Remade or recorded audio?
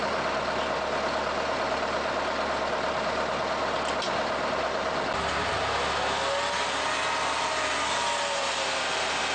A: recorded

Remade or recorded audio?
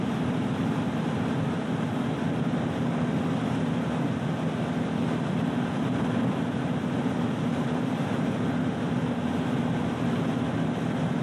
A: recorded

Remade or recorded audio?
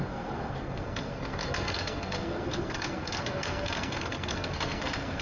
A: remade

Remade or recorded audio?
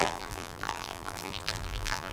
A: remade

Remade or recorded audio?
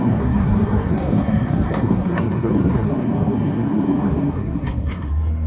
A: remade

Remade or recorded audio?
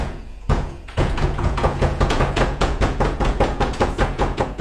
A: remade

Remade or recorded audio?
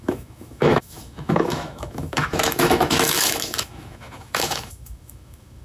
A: remade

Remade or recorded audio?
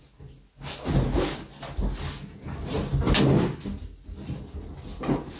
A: recorded